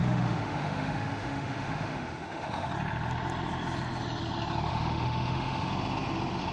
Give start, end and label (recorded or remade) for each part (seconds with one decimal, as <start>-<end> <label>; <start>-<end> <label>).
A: 0.0-2.7 remade; 2.7-4.7 recorded; 4.7-5.7 remade; 5.7-6.5 recorded